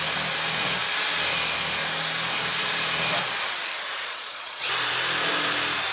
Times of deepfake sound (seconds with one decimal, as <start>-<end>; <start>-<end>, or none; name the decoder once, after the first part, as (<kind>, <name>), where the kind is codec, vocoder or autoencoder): 3.9-4.7 (vocoder, Vocos)